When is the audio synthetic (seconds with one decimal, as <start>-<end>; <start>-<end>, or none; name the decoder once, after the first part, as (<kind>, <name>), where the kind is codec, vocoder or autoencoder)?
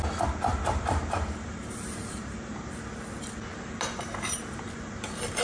0.5-2.8 (vocoder, BigVGAN v2); 3.5-4.8